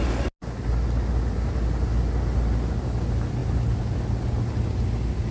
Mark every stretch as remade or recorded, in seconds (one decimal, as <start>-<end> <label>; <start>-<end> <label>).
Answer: 0.0-5.3 recorded